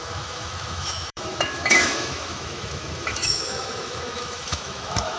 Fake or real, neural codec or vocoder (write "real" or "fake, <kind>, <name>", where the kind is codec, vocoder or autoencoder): fake, autoencoder, DAC-VAE